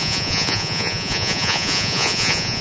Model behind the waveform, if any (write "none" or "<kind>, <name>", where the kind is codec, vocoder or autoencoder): vocoder, Vocos